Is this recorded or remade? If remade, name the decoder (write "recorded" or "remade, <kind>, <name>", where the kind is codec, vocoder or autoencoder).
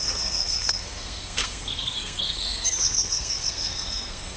remade, codec, SNAC